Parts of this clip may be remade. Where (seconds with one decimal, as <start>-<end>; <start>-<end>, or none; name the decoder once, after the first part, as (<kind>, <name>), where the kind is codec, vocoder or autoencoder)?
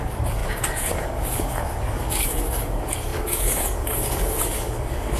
0.0-5.2 (codec, DAC)